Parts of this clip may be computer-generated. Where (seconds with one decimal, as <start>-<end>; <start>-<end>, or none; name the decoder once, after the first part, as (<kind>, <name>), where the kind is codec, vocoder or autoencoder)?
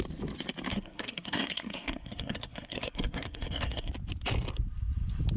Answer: 0.7-3.9 (codec, SNAC)